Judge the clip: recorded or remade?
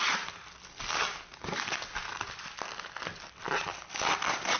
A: recorded